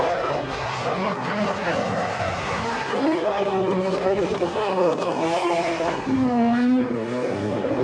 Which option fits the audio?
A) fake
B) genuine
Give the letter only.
A